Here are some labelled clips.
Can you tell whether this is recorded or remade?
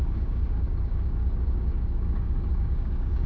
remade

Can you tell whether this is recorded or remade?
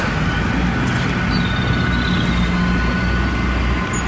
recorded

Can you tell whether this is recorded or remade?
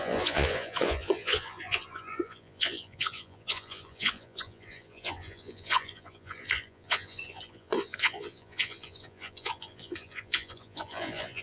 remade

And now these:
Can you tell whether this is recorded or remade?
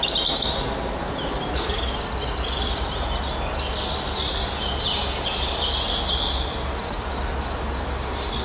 recorded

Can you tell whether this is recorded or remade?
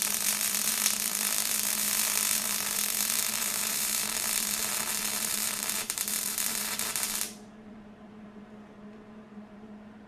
remade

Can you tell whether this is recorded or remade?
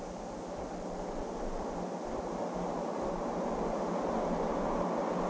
recorded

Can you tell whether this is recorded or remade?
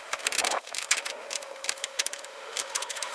remade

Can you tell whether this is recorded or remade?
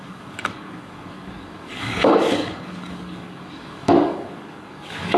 remade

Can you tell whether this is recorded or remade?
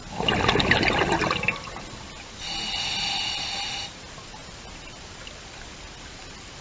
recorded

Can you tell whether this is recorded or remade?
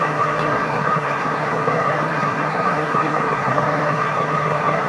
remade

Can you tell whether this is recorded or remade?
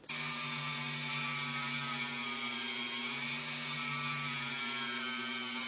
recorded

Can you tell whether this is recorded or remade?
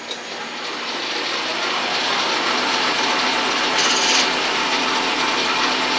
recorded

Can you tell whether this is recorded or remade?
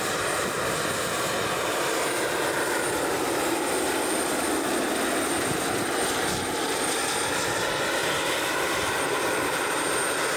recorded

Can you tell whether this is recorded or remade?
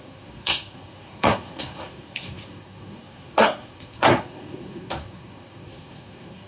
remade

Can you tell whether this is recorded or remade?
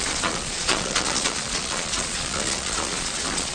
remade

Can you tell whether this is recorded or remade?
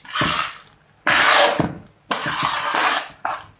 recorded